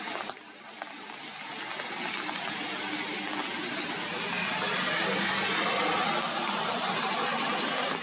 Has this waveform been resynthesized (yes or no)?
no